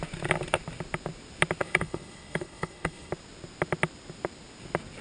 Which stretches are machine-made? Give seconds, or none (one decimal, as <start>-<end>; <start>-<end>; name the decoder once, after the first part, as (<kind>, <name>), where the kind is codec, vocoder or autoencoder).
1.6-3.1 (codec, HILCodec)